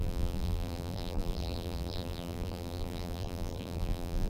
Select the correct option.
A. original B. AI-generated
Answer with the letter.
B